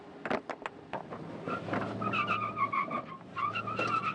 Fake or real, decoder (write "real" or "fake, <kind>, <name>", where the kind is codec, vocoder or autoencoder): real